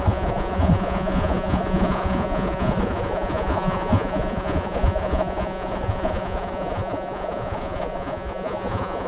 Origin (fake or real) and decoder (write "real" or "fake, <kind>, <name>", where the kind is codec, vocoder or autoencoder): fake, vocoder, Vocos